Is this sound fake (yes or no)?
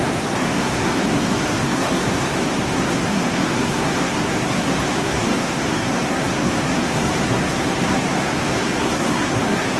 yes